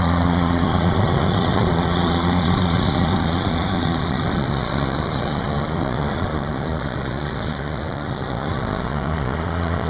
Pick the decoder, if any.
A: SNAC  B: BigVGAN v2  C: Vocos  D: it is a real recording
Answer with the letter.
C